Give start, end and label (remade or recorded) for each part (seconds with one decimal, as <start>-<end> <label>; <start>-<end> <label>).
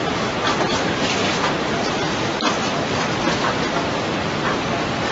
0.0-5.1 recorded